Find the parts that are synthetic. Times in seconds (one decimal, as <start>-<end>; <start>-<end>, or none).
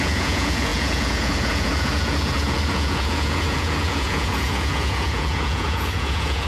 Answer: 0.0-6.5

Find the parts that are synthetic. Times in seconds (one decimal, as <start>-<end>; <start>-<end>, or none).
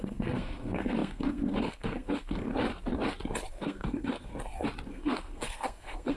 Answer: 0.0-2.5; 3.5-4.3; 4.9-6.2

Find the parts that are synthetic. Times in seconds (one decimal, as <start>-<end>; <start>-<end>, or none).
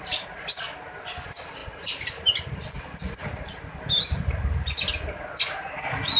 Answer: none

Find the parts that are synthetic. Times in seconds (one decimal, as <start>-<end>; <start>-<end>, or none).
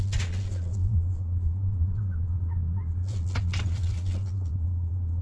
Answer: 0.0-5.2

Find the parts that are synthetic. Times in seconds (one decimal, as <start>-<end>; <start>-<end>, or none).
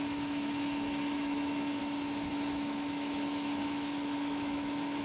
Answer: 0.0-1.8; 2.3-5.0